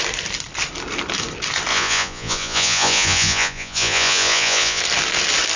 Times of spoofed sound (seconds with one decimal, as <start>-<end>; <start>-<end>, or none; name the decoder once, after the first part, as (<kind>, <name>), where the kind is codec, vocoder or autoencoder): 1.7-4.8 (vocoder, Vocos)